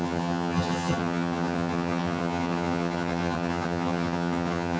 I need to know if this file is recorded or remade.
remade